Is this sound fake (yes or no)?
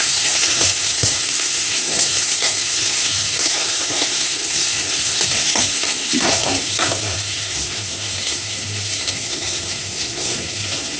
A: yes